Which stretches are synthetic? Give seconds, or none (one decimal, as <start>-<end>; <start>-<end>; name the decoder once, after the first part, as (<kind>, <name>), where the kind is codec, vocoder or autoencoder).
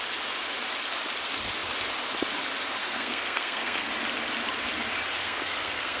2.8-3.9 (codec, SNAC); 5.2-6.0